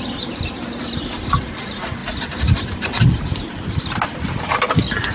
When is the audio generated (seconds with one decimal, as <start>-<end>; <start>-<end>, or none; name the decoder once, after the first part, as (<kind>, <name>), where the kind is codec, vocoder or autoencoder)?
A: none